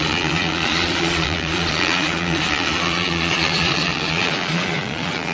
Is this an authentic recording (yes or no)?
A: no